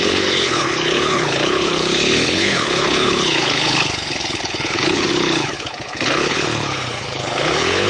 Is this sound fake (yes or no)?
yes